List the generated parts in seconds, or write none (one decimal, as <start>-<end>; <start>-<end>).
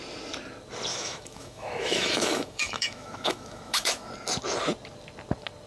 0.9-4.1